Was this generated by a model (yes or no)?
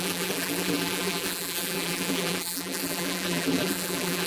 yes